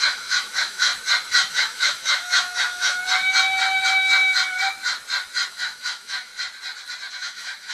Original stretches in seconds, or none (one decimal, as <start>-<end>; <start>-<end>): 0.9-1.5; 3.0-5.5; 6.3-7.1